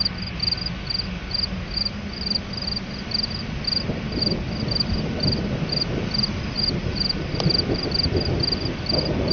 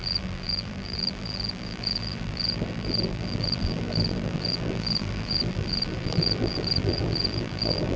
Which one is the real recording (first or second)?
first